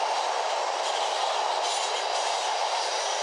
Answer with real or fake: real